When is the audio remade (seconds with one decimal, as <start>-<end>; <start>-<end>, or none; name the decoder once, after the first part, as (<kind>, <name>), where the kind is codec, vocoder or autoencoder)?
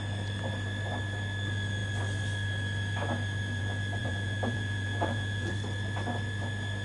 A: 4.0-5.5 (vocoder, Vocos)